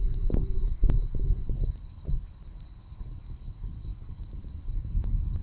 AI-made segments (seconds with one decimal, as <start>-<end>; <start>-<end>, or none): 0.5-3.1; 3.9-4.6